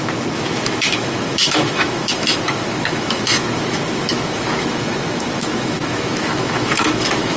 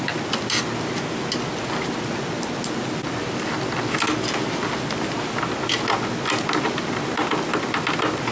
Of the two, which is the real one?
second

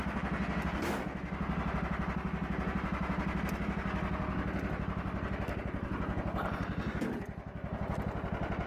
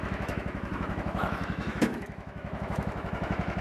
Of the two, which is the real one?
first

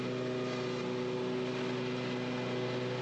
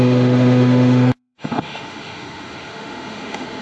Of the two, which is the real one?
first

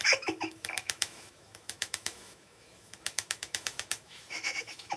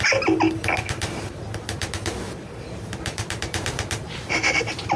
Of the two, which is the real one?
second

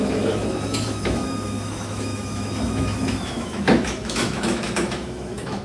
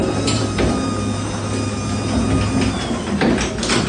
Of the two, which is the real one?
second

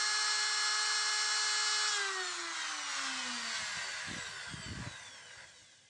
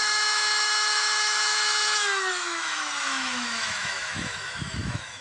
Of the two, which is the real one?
first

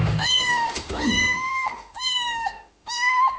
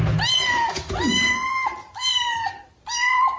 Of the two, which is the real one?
second